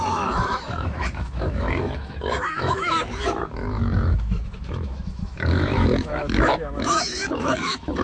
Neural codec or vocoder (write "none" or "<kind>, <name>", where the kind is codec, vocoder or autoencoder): autoencoder, DAC-VAE